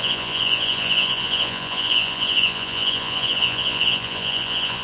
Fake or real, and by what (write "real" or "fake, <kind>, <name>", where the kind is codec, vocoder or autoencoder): fake, vocoder, Vocos